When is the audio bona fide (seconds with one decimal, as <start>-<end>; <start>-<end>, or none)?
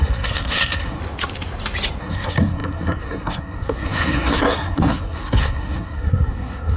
1.0-2.0